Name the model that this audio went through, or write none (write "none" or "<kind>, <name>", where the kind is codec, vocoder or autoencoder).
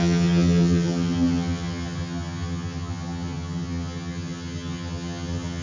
vocoder, HiFi-GAN